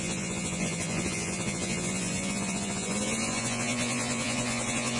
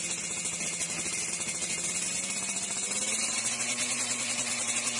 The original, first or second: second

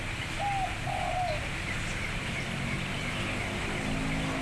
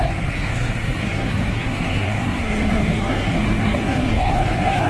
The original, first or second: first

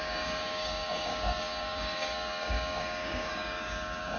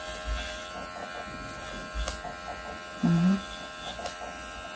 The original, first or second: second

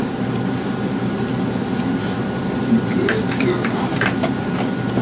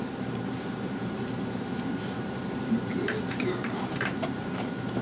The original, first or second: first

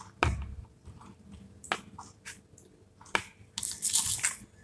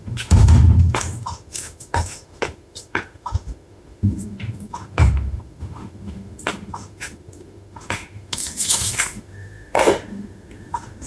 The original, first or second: first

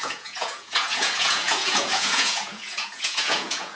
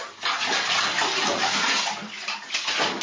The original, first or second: second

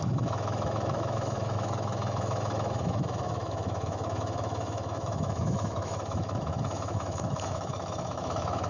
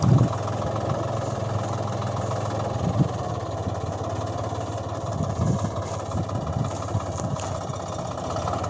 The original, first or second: second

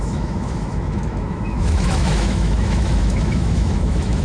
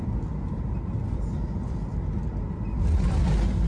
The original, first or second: second